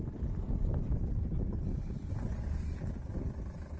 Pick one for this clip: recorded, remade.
recorded